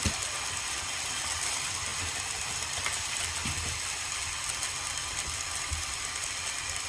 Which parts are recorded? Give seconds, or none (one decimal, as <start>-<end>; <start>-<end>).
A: 0.0-6.9